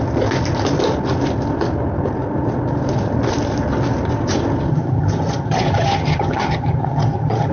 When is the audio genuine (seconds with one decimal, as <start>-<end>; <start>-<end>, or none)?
0.0-4.7